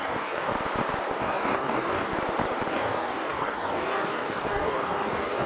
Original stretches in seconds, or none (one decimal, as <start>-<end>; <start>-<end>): 0.5-1.2; 2.1-2.7